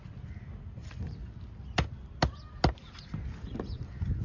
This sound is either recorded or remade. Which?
recorded